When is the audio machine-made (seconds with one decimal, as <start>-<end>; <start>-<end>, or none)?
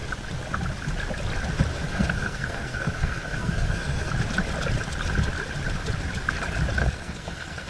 1.7-4.1; 6.8-7.7